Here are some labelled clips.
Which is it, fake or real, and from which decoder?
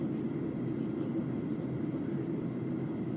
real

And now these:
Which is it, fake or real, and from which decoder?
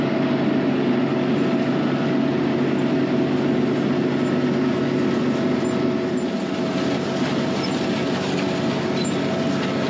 real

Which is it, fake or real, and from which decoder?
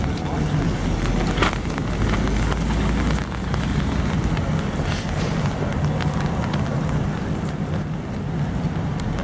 real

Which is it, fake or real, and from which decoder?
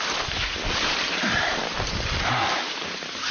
fake, vocoder, BigVGAN v2